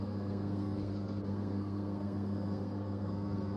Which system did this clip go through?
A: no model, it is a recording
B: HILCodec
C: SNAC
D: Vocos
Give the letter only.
C